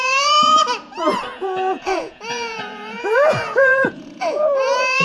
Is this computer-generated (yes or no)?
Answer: yes